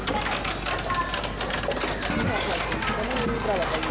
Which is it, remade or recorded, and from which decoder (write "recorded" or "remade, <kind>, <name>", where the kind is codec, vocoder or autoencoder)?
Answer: recorded